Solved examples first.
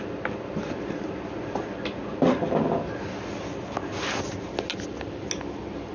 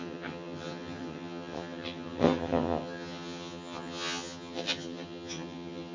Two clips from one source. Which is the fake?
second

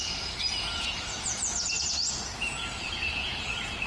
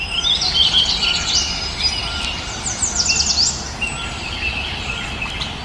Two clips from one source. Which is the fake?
first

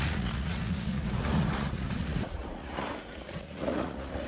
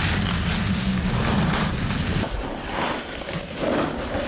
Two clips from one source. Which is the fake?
first